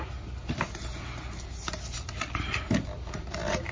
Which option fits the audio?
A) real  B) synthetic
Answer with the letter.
A